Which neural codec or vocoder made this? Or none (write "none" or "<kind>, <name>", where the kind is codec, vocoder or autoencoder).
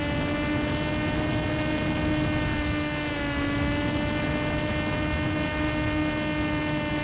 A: none